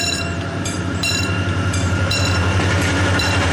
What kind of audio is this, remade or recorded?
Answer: remade